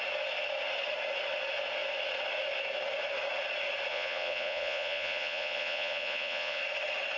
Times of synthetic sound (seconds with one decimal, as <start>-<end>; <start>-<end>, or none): 3.9-6.6